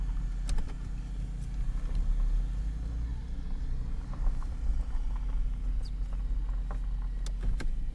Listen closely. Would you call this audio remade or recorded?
recorded